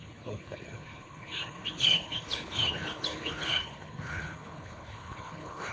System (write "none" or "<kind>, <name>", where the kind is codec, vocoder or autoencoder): codec, HILCodec